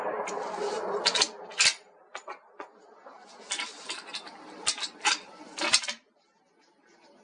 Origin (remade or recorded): recorded